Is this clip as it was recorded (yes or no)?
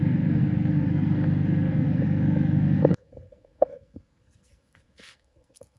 no